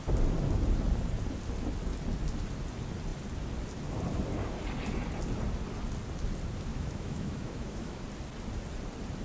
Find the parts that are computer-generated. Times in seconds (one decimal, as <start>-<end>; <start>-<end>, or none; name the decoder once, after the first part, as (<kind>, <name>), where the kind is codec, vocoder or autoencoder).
6.7-8.0 (autoencoder, DAC-VAE)